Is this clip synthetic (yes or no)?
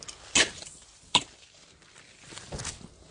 no